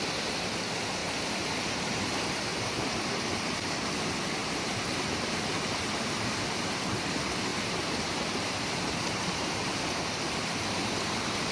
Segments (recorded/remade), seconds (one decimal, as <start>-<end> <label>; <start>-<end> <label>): 0.0-1.0 recorded; 1.0-2.1 remade; 2.1-2.5 recorded; 2.5-3.9 remade; 3.9-4.4 recorded; 4.4-5.5 remade; 5.5-7.5 recorded; 7.5-10.9 remade; 10.9-11.5 recorded